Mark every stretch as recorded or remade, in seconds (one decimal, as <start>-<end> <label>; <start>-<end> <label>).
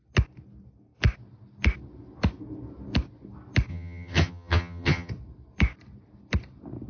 0.0-3.7 recorded; 3.7-5.1 remade; 5.1-6.9 recorded